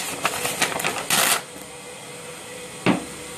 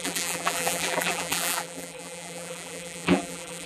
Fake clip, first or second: second